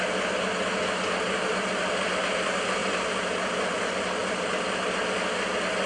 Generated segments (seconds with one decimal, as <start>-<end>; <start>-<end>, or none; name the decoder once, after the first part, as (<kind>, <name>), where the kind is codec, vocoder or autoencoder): 4.2-4.8 (vocoder, BigVGAN v2)